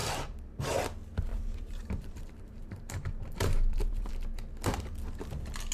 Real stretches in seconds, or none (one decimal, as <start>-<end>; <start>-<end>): 0.6-1.3; 4.1-5.7